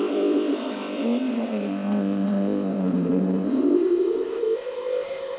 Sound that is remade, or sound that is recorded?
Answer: remade